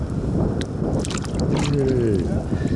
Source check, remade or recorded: recorded